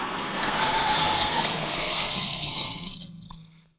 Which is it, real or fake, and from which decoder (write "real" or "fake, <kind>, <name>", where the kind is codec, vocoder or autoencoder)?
fake, codec, SNAC